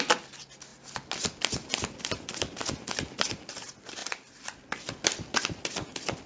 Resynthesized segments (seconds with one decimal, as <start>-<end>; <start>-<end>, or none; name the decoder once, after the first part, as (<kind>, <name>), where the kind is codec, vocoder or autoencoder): none